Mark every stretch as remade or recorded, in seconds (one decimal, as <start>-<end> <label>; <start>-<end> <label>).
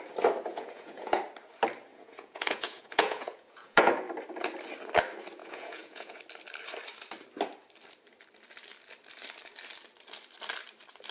0.0-0.5 recorded; 0.5-1.2 remade; 1.2-1.9 recorded; 1.9-3.9 remade; 3.9-5.4 recorded; 5.4-6.2 remade; 6.2-11.1 recorded